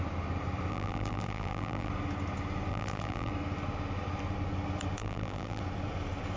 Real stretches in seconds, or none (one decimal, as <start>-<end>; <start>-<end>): 0.0-0.7; 1.9-2.7; 3.3-5.0; 5.6-6.4